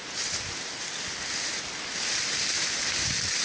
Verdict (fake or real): real